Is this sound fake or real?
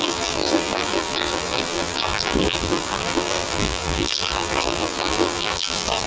fake